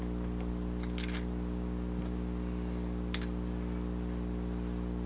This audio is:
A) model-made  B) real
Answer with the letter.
B